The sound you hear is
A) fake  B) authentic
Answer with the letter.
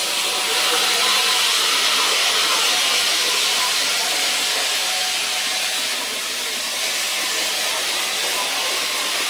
B